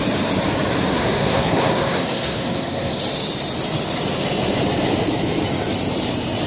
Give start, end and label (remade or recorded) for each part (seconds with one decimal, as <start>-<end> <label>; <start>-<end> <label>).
0.0-0.9 recorded; 0.9-3.0 remade; 3.0-6.5 recorded